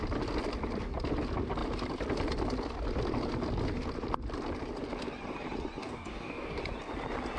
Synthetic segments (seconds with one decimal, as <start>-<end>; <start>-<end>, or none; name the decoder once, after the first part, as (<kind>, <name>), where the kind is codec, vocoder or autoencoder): 5.8-6.6 (codec, DAC)